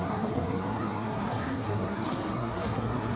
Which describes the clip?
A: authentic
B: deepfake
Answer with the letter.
B